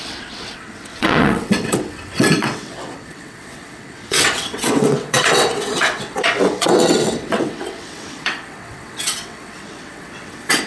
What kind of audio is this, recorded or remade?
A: remade